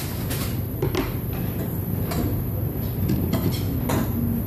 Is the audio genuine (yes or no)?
yes